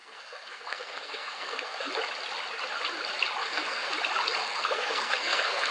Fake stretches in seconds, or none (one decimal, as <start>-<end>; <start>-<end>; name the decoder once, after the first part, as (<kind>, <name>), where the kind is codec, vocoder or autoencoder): 0.0-1.9 (codec, SNAC); 3.4-3.9; 4.4-5.7

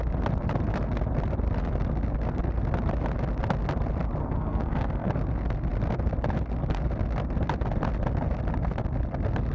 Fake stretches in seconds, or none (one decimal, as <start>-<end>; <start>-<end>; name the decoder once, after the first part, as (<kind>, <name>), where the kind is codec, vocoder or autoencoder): 4.2-5.1 (codec, SNAC)

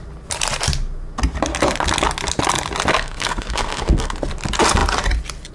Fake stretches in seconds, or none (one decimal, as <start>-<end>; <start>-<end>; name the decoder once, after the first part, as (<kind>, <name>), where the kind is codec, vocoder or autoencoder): 2.9-4.1 (codec, SNAC)

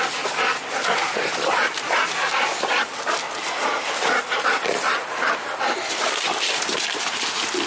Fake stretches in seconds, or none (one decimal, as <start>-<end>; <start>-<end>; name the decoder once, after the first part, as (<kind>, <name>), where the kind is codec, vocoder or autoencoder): none

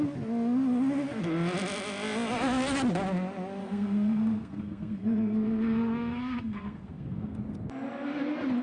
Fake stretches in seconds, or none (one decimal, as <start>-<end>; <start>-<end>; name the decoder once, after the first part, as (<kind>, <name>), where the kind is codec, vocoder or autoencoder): 3.6-7.4 (codec, SNAC)

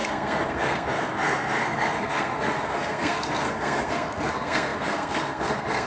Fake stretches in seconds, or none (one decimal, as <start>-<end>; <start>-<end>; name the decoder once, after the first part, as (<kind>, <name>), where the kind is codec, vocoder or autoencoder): 0.0-5.9 (codec, SNAC)